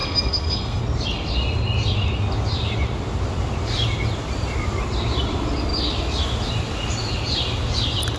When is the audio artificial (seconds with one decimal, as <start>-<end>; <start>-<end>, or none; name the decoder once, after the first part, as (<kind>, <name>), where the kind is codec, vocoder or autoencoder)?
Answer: 0.0-0.8 (codec, SNAC)